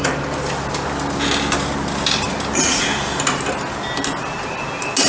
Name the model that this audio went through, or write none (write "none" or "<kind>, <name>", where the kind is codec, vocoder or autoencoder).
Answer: none